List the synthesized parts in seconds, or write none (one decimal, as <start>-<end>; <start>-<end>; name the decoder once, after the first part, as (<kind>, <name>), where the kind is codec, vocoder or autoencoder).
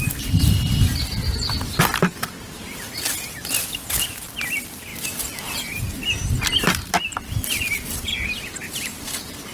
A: 4.9-9.5 (vocoder, BigVGAN v2)